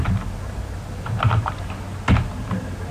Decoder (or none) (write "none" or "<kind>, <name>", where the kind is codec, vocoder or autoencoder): none